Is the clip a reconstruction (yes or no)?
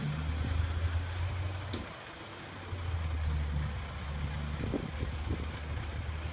no